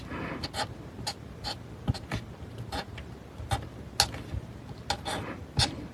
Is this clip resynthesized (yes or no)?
no